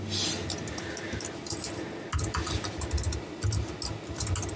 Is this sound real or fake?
real